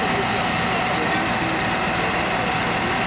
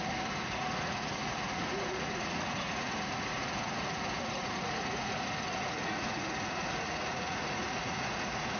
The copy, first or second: second